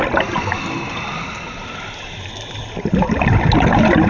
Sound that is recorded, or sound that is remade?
recorded